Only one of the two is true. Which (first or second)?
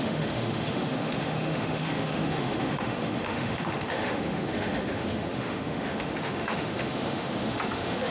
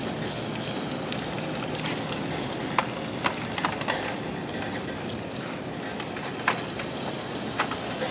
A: second